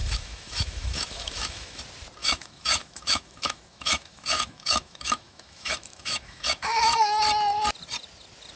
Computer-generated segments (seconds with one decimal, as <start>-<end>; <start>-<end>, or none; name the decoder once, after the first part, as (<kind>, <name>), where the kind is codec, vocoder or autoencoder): 0.0-1.8 (autoencoder, DAC-VAE); 2.2-7.2